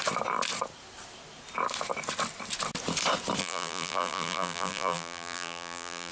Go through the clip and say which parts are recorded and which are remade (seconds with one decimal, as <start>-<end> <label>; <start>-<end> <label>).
0.0-3.4 recorded; 3.4-6.1 remade